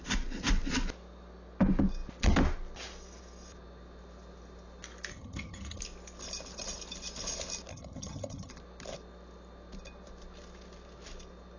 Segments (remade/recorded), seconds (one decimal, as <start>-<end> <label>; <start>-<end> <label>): 0.0-5.1 recorded; 5.1-5.8 remade; 5.8-7.7 recorded; 7.7-8.5 remade; 8.5-11.6 recorded